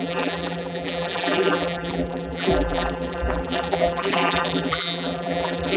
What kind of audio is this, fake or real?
fake